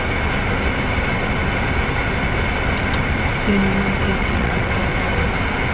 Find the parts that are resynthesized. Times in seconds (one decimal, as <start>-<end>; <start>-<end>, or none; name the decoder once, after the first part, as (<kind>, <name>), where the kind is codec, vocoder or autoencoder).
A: 4.2-4.7 (vocoder, WaveNeXt)